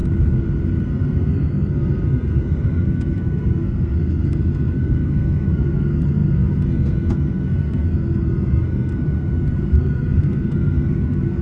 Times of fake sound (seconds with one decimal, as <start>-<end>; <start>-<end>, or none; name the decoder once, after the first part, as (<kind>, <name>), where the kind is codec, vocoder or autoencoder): 0.8-11.4 (codec, SNAC)